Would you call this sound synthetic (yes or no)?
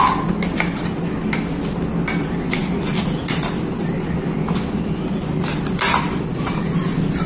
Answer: no